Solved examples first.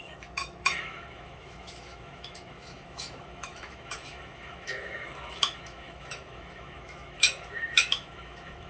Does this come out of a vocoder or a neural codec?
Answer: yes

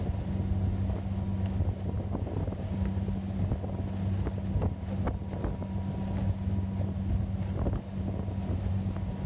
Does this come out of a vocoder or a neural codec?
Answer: no